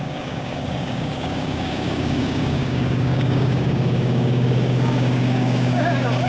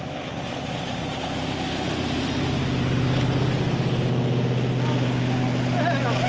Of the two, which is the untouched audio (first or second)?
second